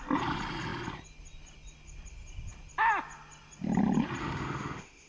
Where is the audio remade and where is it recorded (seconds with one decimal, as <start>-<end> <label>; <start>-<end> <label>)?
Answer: 0.0-4.2 recorded; 4.2-5.1 remade